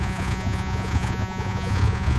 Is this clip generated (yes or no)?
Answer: yes